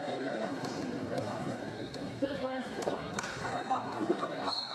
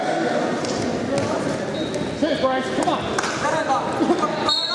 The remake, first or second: first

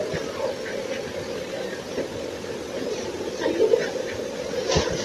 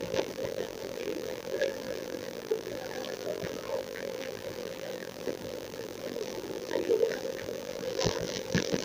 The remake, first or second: second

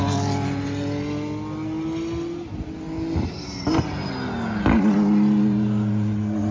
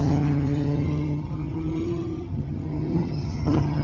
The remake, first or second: second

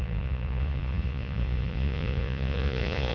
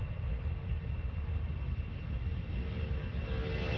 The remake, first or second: first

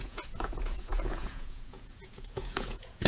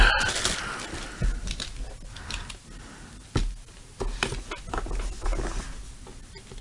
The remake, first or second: first